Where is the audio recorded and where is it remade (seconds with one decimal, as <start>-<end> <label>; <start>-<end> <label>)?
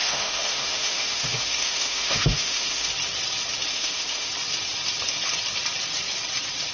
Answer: 0.0-2.9 remade; 2.9-3.7 recorded; 3.7-4.3 remade; 4.3-6.7 recorded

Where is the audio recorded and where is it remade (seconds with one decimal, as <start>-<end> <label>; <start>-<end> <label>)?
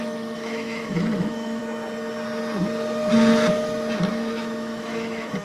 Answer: 0.0-1.6 remade; 1.6-4.1 recorded; 4.1-5.4 remade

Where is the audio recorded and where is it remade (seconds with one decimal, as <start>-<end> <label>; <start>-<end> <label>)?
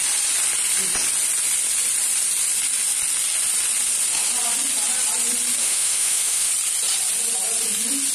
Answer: 0.0-5.6 recorded; 5.6-6.5 remade; 6.5-8.1 recorded